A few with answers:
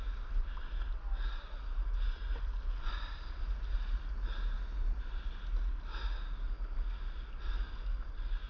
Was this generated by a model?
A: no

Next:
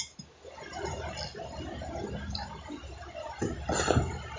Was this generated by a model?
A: no